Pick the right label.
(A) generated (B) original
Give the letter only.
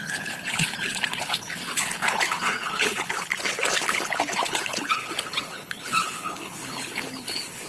A